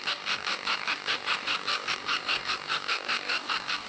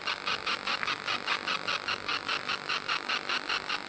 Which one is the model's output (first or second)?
first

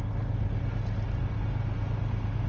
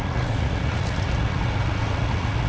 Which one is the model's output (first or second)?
second